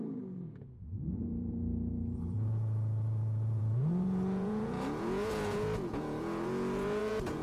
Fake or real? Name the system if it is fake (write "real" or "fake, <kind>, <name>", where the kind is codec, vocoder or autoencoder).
fake, vocoder, Vocos